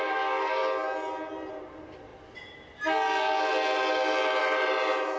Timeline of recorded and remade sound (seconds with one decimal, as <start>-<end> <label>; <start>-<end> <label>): 0.0-0.6 remade; 0.6-1.6 recorded; 1.6-2.1 remade; 2.1-4.4 recorded; 4.4-5.2 remade